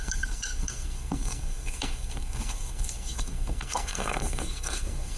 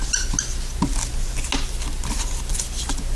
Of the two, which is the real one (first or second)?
second